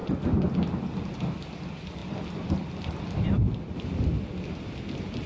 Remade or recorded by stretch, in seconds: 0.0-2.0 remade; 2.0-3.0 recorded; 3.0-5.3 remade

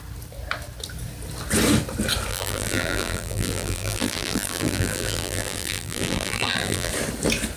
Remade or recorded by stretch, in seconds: 0.0-2.3 recorded; 2.3-6.9 remade; 6.9-7.6 recorded

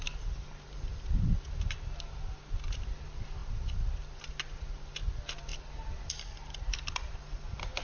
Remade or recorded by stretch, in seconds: 0.0-7.8 recorded

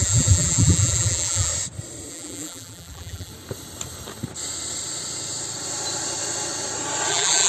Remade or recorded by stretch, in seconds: 0.0-1.5 remade; 1.5-2.1 recorded; 2.1-3.3 remade; 3.3-7.1 recorded; 7.1-7.5 remade